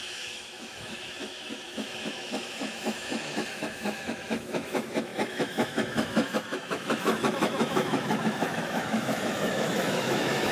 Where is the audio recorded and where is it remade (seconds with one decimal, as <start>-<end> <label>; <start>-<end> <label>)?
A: 0.0-10.5 remade